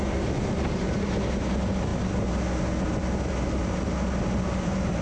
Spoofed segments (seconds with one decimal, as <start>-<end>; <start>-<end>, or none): 0.0-1.9; 4.6-5.0